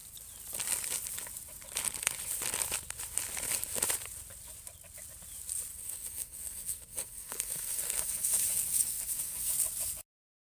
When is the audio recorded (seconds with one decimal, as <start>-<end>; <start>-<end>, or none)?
0.0-5.7; 9.5-10.6